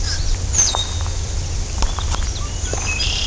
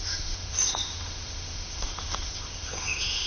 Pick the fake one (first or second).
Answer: second